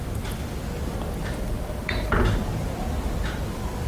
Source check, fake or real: real